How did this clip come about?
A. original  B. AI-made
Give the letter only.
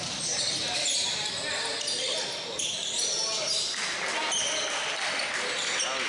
A